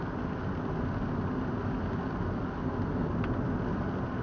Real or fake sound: real